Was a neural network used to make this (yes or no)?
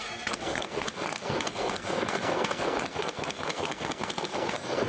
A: yes